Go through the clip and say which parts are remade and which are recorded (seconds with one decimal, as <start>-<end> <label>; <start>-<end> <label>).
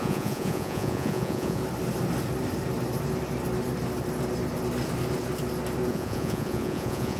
0.0-1.6 remade; 1.6-5.9 recorded; 5.9-7.2 remade